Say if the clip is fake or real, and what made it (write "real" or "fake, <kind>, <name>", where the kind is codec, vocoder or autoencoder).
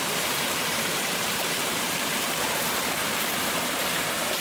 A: fake, vocoder, BigVGAN v2